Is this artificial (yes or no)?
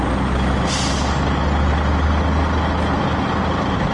no